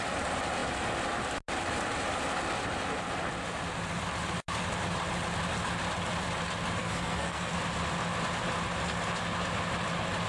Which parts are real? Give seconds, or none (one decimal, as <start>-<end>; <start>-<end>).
0.0-6.8; 7.5-10.3